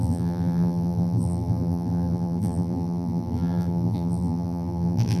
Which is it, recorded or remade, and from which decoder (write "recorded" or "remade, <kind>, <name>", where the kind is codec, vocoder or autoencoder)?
remade, vocoder, BigVGAN v2